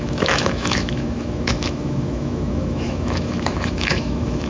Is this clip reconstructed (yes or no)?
yes